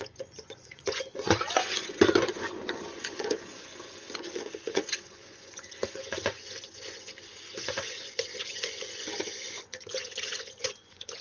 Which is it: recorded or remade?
remade